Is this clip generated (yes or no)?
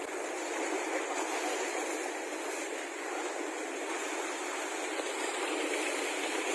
no